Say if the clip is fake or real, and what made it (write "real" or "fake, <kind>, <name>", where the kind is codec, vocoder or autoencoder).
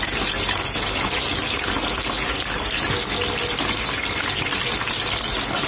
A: real